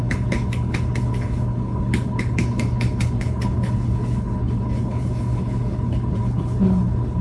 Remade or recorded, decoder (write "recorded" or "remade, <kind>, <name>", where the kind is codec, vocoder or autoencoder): remade, codec, HILCodec